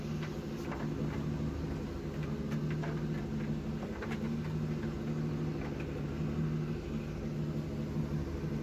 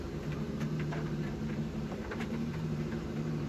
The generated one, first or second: second